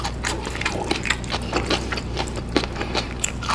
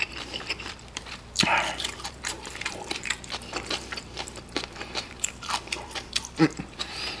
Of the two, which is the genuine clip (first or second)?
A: first